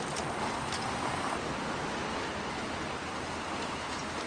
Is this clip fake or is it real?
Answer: real